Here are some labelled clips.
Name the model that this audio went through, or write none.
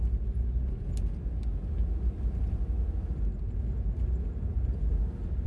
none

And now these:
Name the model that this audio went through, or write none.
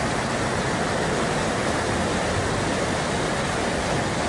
none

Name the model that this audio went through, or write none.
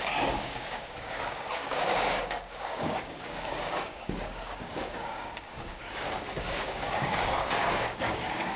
codec, DAC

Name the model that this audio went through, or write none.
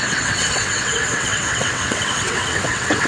vocoder, WaveNeXt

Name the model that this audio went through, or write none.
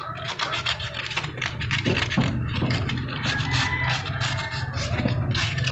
none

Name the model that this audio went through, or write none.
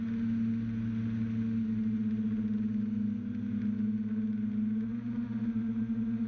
none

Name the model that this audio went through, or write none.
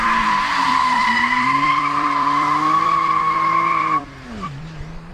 vocoder, BigVGAN v2